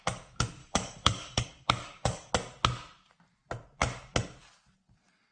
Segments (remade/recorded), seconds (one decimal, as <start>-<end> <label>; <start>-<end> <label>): 0.0-0.6 recorded; 0.6-2.3 remade; 2.3-5.3 recorded